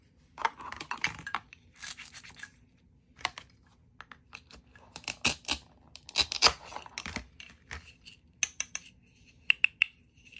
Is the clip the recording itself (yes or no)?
yes